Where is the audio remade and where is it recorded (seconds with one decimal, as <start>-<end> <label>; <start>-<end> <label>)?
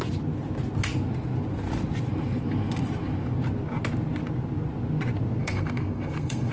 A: 0.0-5.4 recorded; 5.4-6.5 remade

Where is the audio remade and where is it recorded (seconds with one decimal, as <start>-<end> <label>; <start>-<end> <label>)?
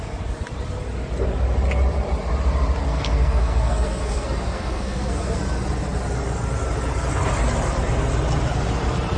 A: 0.0-2.8 recorded; 2.8-5.4 remade; 5.4-9.2 recorded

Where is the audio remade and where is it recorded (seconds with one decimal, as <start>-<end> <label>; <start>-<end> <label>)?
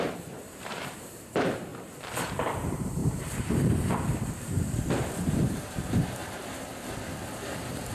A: 0.0-1.7 remade; 1.7-2.3 recorded; 2.3-6.2 remade; 6.2-7.9 recorded